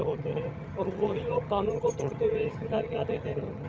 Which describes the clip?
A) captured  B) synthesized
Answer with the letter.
B